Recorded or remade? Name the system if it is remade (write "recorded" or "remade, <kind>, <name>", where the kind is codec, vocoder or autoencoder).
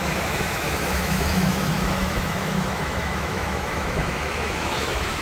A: remade, autoencoder, DAC-VAE